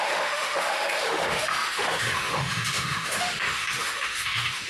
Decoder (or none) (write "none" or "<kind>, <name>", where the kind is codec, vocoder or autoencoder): autoencoder, DAC-VAE